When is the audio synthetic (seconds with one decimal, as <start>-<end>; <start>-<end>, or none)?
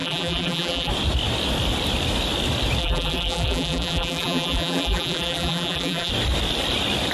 0.0-0.9; 2.8-6.1